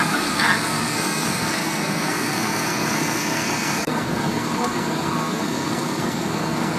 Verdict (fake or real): fake